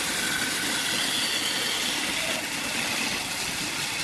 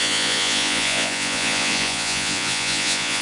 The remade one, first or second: second